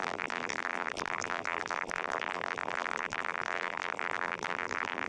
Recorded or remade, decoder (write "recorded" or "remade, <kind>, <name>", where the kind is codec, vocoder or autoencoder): remade, vocoder, BigVGAN v2